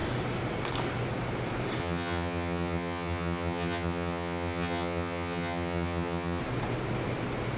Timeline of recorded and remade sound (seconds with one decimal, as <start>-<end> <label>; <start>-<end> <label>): 0.0-1.8 recorded; 1.8-6.4 remade; 6.4-7.6 recorded